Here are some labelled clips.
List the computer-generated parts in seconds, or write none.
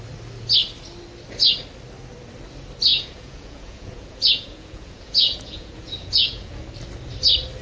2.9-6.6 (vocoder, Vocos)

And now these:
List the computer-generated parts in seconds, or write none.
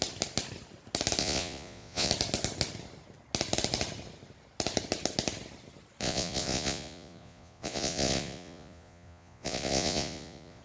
1.2-2.1 (vocoder, Vocos); 6.0-10.6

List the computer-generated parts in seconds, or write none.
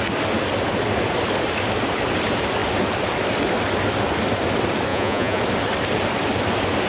4.9-5.4 (vocoder, Vocos)